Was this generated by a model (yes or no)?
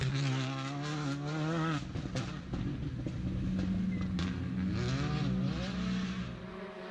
no